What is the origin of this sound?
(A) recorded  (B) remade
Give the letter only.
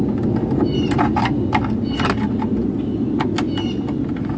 A